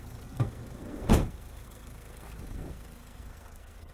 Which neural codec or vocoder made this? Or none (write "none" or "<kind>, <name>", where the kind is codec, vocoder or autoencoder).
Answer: codec, SNAC